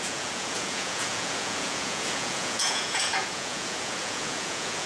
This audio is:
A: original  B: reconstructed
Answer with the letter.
B